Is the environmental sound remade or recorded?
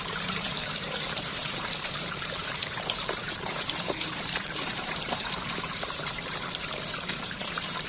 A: remade